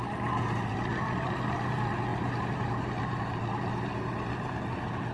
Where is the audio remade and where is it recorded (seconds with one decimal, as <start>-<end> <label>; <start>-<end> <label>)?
0.0-2.1 recorded; 2.1-2.8 remade; 2.8-5.1 recorded